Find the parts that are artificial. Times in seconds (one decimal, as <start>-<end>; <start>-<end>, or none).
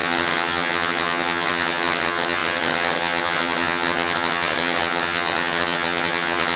0.0-6.6